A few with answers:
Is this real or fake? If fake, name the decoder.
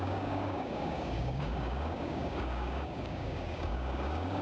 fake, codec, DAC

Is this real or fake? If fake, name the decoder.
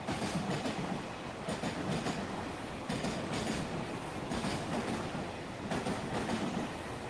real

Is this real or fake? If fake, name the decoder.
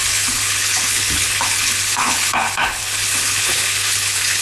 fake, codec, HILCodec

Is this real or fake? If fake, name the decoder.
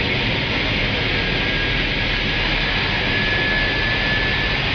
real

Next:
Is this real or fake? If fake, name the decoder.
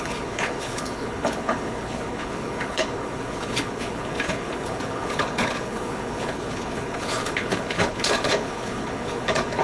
fake, codec, HILCodec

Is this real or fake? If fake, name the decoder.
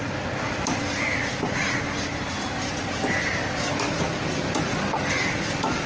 real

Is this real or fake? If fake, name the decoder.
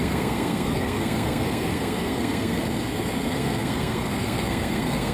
fake, codec, SNAC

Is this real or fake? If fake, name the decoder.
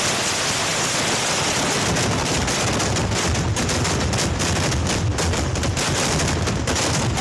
real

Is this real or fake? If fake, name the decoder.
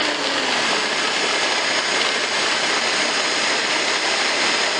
real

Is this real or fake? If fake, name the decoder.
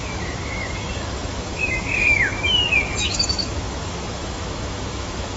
fake, autoencoder, DAC-VAE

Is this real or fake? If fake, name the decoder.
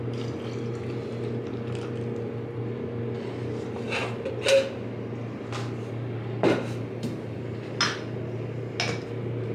real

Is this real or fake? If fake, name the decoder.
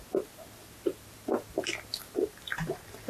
real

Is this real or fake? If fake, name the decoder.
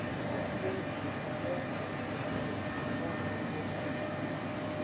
real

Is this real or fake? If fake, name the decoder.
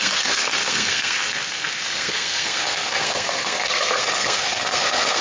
fake, codec, SNAC